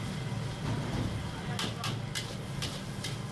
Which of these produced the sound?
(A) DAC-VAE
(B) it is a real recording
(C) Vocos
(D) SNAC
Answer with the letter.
B